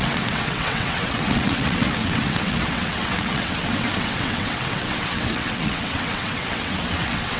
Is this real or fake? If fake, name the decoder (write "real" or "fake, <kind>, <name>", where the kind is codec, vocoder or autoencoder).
fake, vocoder, WaveNeXt